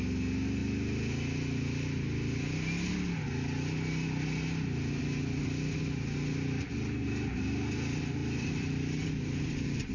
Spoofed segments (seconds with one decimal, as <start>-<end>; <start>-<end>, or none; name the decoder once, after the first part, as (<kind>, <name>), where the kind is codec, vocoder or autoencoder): 8.2-9.9 (vocoder, BigVGAN v2)